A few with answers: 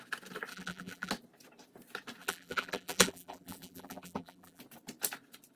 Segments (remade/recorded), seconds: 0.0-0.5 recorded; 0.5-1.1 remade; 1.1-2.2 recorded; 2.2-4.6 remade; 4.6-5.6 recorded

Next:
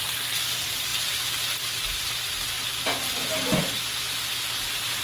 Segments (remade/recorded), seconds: 0.0-5.0 recorded

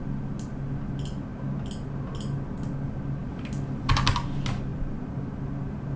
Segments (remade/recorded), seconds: 0.0-4.7 recorded; 4.7-5.2 remade; 5.2-6.0 recorded

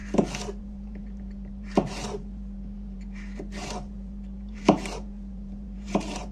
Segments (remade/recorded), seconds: 0.0-0.6 recorded; 0.6-6.3 remade

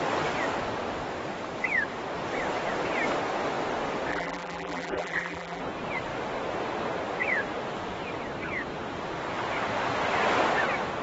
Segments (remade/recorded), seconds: 0.0-4.1 recorded; 4.1-5.6 remade; 5.6-11.0 recorded

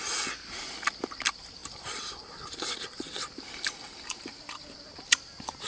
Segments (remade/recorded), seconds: 0.0-1.6 recorded; 1.6-4.8 remade; 4.8-5.7 recorded

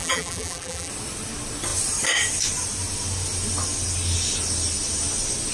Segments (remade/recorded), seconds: 0.0-0.9 remade; 0.9-5.5 recorded

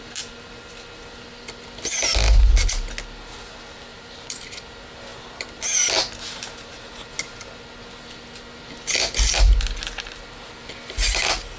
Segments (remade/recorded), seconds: 0.0-3.9 recorded; 3.9-4.6 remade; 4.6-11.6 recorded